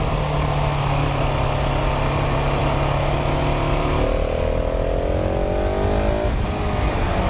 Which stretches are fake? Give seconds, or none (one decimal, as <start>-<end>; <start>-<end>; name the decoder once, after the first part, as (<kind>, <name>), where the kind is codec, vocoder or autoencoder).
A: none